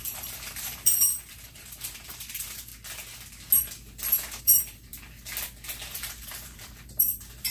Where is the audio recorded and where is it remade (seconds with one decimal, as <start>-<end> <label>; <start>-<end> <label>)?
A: 0.0-2.7 remade; 2.7-4.4 recorded; 4.4-4.9 remade; 4.9-5.9 recorded; 5.9-7.5 remade